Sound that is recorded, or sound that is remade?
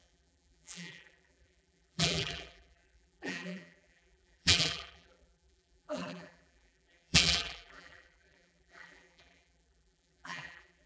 remade